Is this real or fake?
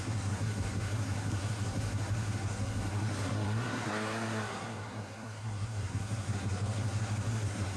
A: fake